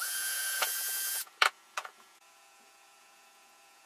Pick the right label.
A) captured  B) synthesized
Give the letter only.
B